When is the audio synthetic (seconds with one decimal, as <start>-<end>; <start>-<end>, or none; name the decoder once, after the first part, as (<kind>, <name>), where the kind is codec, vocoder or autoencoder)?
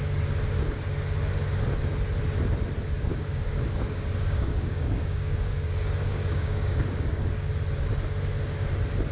3.1-7.5 (codec, DAC)